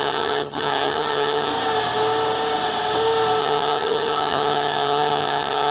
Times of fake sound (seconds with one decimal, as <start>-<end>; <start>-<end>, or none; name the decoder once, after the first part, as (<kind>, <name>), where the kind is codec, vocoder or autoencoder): 0.0-1.5 (vocoder, HiFi-GAN); 3.4-5.7